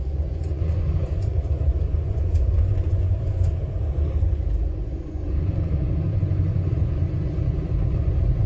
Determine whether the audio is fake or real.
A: fake